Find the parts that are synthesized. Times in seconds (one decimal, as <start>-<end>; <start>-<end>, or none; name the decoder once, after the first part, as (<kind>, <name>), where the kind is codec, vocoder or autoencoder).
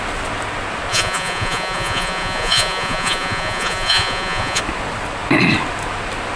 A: 0.9-4.6 (vocoder, Vocos)